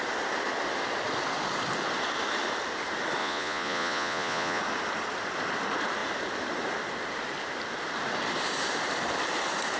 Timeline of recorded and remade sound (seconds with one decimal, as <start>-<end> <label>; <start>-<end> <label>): 0.0-3.2 recorded; 3.2-4.6 remade; 4.6-9.8 recorded